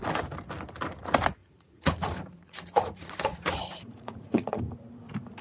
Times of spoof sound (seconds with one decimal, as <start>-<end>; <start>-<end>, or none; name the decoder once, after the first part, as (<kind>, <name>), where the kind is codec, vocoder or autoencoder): 1.4-4.6 (vocoder, Vocos)